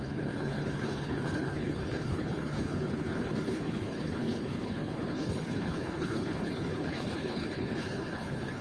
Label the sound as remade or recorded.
remade